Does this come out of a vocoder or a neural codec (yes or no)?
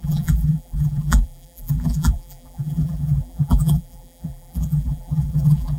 yes